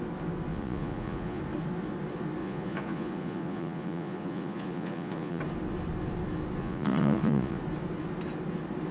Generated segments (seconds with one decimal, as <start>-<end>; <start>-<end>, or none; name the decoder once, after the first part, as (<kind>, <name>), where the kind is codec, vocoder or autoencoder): 0.5-1.4 (vocoder, Vocos); 2.4-5.4; 6.6-7.6